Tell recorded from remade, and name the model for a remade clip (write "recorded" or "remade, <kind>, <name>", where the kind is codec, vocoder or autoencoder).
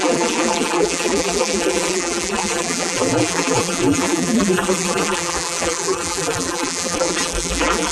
remade, vocoder, BigVGAN v2